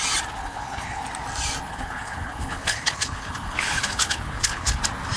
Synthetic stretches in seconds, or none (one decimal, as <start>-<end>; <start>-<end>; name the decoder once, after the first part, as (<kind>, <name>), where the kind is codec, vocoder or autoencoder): 0.4-1.0 (codec, HILCodec); 1.7-4.8